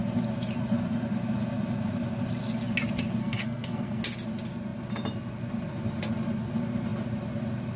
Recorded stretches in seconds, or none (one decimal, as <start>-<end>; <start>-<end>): 0.0-3.2; 4.0-7.8